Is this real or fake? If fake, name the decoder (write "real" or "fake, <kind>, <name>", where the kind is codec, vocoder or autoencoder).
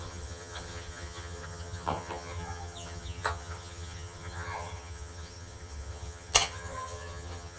fake, vocoder, HiFi-GAN